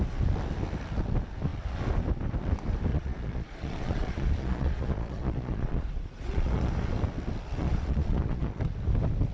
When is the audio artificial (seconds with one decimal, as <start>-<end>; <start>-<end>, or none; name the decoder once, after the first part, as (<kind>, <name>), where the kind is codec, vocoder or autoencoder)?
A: 2.9-6.7 (vocoder, Vocos); 7.6-8.6